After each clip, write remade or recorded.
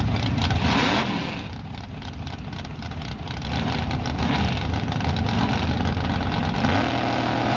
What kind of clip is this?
recorded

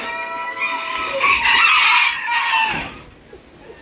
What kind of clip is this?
recorded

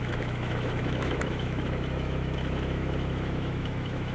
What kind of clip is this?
remade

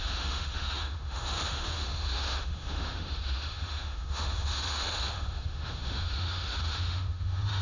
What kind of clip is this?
remade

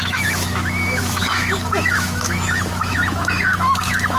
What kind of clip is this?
remade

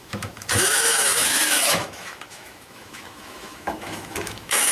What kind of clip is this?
remade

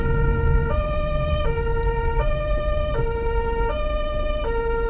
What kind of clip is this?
recorded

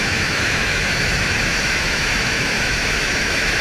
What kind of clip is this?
remade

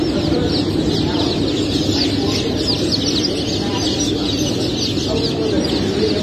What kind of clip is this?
recorded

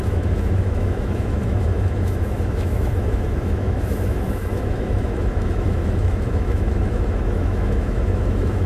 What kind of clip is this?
remade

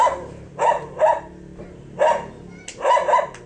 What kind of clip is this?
recorded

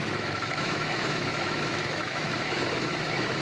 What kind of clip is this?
remade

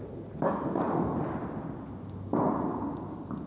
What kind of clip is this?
recorded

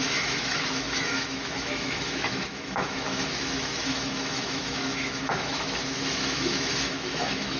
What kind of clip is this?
remade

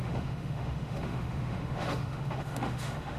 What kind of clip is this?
remade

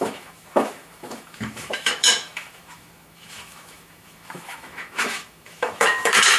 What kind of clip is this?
remade